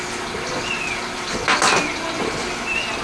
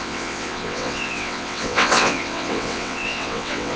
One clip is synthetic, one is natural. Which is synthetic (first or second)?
second